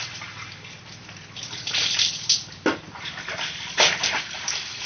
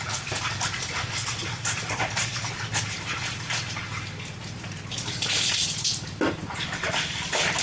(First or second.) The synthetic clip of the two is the second